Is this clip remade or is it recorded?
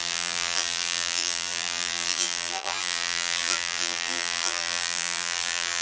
remade